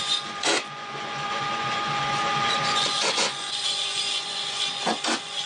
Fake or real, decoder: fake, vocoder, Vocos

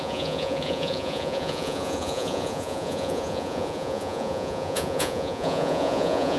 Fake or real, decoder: fake, vocoder, Vocos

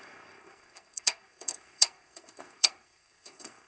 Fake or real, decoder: fake, codec, SNAC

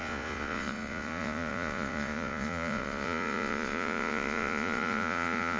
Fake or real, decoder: fake, vocoder, Vocos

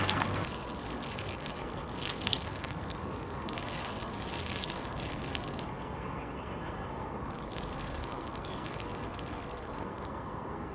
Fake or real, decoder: fake, codec, SNAC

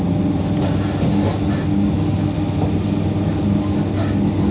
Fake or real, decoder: real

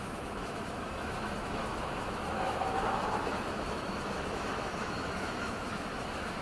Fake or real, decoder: fake, autoencoder, DAC-VAE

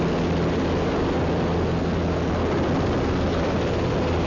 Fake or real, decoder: real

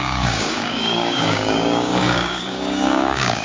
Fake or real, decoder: fake, codec, DAC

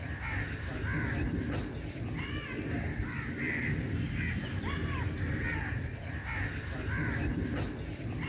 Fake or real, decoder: real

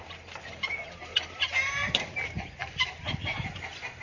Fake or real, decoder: fake, vocoder, BigVGAN v2